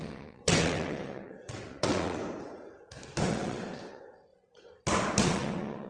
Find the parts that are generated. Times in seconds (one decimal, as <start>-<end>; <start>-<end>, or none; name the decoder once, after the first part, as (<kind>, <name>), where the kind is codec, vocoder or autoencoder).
0.0-2.2 (vocoder, WaveNeXt); 3.3-4.3; 5.2-5.9